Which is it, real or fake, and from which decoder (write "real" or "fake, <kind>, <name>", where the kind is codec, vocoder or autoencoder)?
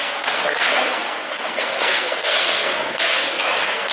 fake, codec, SNAC